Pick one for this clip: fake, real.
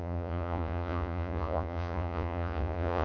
fake